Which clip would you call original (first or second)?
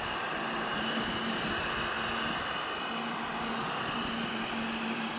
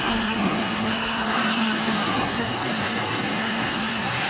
first